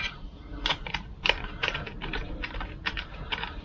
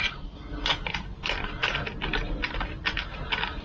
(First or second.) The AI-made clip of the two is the first